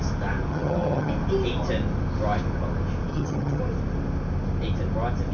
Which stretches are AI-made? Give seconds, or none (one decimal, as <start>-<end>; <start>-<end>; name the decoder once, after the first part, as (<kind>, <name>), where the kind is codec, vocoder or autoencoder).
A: 0.5-1.1 (vocoder, HiFi-GAN); 3.1-3.6